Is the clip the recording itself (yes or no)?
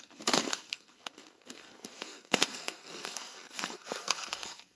no